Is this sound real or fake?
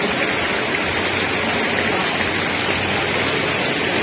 real